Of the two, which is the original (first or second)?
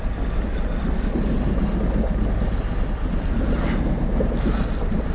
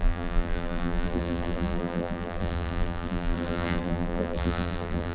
first